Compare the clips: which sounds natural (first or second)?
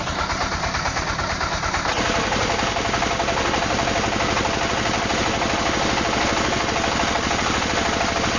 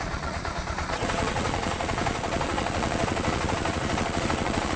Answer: first